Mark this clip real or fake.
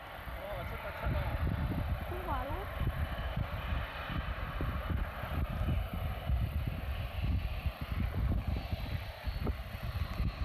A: fake